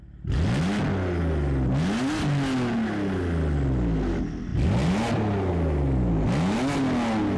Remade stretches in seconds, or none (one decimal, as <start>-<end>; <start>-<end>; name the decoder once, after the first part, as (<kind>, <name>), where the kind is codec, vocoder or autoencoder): none